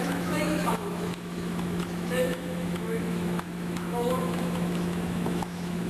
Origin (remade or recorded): remade